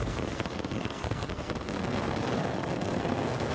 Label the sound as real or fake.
fake